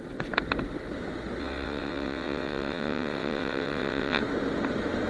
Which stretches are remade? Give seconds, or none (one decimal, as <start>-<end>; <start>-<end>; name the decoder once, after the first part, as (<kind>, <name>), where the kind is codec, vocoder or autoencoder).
1.4-4.2 (vocoder, WaveNeXt)